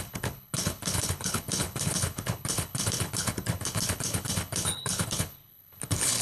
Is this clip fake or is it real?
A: fake